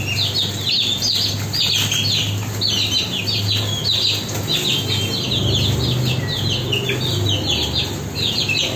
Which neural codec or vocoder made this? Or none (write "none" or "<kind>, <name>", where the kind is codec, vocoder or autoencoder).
none